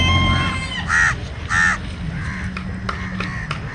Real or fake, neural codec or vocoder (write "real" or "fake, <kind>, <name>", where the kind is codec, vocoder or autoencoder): real